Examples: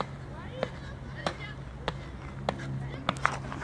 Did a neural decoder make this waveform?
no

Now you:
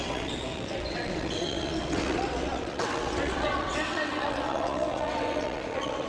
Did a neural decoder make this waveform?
yes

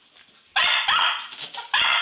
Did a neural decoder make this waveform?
no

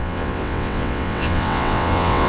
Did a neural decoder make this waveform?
yes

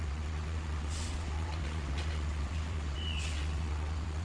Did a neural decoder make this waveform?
yes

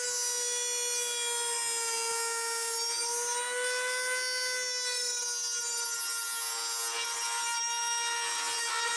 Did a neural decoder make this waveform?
no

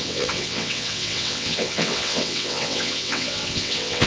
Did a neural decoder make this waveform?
yes